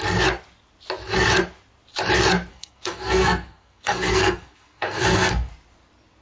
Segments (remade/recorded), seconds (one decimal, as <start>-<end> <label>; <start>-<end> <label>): 0.0-2.5 recorded; 2.5-5.5 remade; 5.5-6.2 recorded